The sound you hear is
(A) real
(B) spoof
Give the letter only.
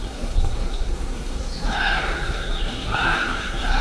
B